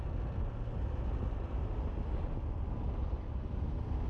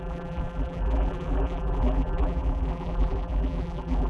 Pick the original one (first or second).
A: first